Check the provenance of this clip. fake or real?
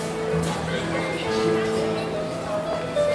real